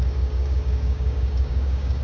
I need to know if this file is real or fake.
fake